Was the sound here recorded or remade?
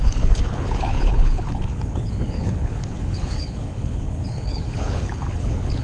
remade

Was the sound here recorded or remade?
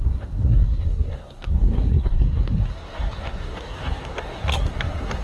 remade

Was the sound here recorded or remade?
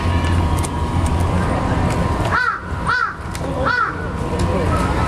recorded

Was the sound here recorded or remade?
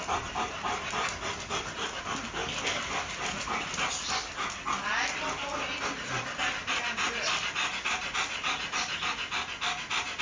recorded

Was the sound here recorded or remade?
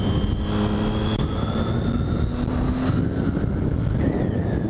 recorded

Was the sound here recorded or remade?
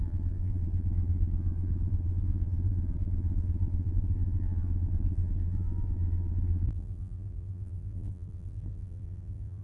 remade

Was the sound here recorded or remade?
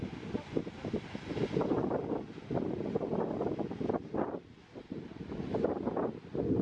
recorded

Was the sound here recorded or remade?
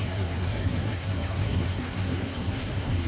remade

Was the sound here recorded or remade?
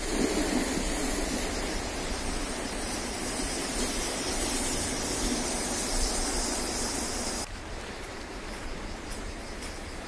recorded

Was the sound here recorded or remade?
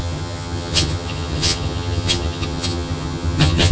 remade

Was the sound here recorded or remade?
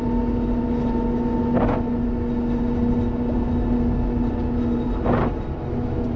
recorded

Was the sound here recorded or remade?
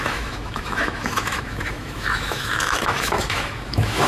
remade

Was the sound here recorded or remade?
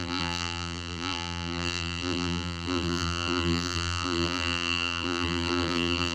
remade